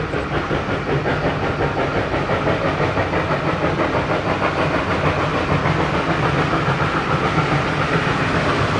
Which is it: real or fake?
real